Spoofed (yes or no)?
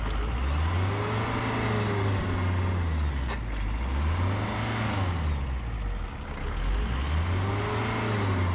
no